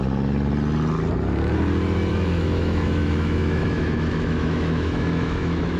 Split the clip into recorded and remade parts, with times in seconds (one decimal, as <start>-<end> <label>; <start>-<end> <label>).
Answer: 0.0-2.1 recorded; 2.1-5.8 remade